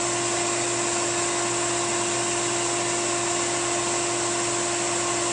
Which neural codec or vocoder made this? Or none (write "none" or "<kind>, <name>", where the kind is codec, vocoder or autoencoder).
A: none